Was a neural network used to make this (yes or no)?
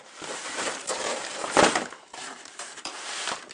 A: yes